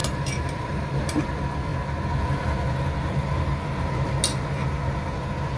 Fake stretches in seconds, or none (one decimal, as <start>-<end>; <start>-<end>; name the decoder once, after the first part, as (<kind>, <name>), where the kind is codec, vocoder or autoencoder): 0.0-1.2 (vocoder, BigVGAN v2)